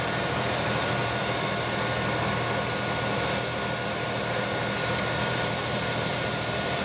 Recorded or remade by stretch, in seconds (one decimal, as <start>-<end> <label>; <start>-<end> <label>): 0.0-1.0 remade; 1.0-5.0 recorded; 5.0-6.8 remade